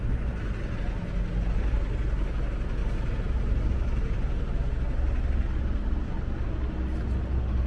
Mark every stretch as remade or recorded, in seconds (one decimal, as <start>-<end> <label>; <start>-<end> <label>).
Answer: 0.0-2.8 recorded; 2.8-3.6 remade; 3.6-7.7 recorded